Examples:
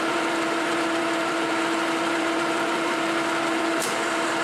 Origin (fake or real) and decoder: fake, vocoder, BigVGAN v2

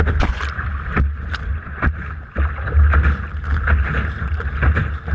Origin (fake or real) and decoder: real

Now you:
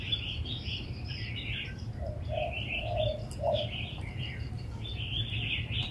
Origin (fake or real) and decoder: fake, vocoder, BigVGAN v2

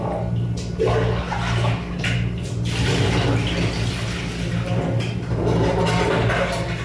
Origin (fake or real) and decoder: real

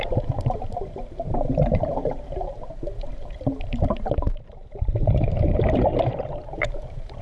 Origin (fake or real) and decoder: fake, vocoder, BigVGAN v2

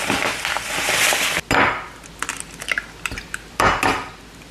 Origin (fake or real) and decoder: real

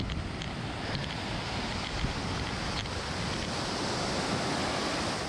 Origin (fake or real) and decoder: real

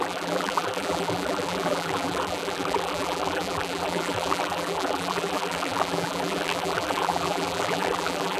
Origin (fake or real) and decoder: fake, vocoder, BigVGAN v2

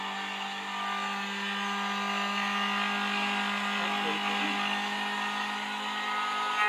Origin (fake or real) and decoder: real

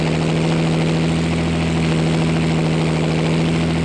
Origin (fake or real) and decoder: real